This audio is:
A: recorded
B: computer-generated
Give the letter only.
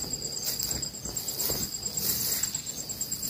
A